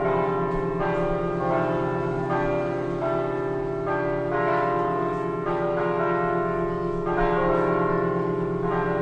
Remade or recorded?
recorded